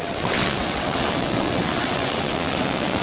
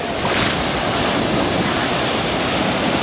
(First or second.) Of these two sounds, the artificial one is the first